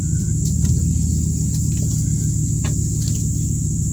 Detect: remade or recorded recorded